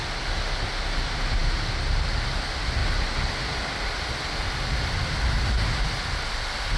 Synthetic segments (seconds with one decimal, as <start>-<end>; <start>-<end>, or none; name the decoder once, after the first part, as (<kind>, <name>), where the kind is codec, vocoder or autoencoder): none